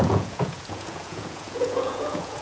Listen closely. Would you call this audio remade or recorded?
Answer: remade